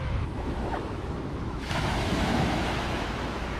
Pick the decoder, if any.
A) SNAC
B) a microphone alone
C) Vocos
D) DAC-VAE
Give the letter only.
D